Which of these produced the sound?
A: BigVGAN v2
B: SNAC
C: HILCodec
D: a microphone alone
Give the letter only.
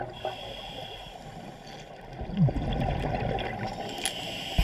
D